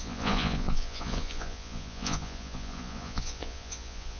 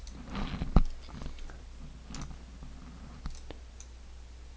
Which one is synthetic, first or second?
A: first